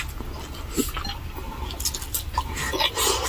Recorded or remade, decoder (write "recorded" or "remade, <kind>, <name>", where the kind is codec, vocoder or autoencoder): recorded